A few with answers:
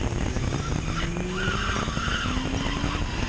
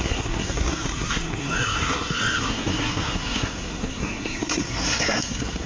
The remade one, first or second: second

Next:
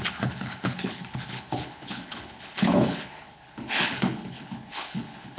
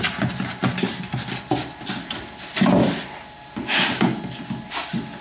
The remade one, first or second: first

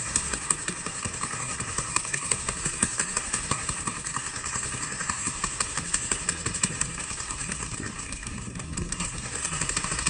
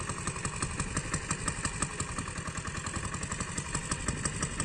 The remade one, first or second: first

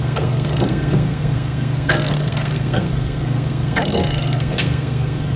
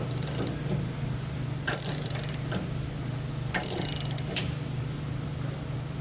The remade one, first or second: first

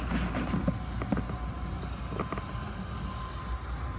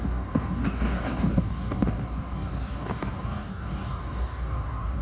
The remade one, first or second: second